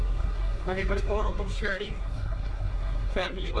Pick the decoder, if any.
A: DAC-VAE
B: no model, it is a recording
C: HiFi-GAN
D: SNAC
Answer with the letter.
D